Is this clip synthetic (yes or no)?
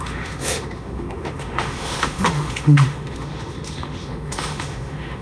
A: yes